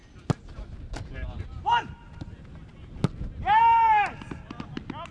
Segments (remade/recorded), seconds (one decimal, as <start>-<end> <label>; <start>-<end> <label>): 0.0-5.1 recorded